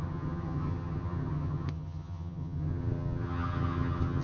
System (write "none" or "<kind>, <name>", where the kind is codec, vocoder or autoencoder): vocoder, HiFi-GAN